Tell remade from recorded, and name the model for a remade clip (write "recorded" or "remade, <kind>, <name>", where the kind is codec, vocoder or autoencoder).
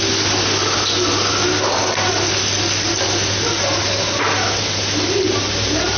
recorded